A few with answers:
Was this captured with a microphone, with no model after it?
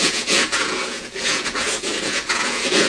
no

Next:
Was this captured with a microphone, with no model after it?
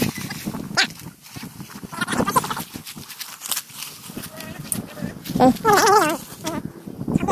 yes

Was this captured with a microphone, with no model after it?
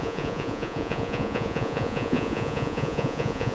no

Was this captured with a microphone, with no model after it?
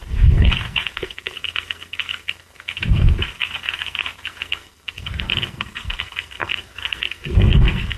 no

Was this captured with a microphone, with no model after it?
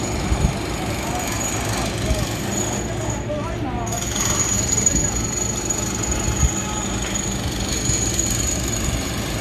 yes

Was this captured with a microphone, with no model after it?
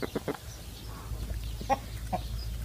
yes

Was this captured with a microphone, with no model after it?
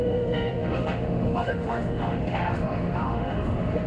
no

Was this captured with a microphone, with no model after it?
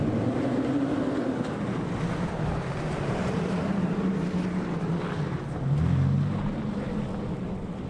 yes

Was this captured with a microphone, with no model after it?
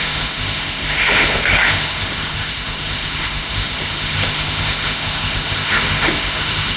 no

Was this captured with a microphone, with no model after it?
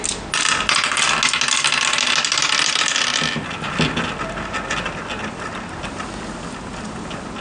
yes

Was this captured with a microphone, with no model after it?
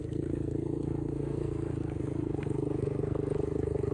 no